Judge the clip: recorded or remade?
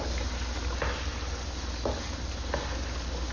recorded